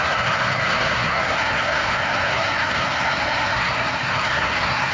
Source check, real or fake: fake